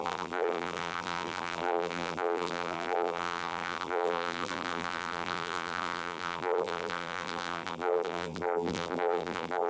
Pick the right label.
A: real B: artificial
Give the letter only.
B